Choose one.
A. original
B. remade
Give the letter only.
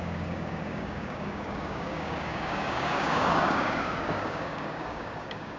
B